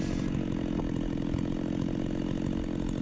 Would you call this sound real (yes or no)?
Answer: yes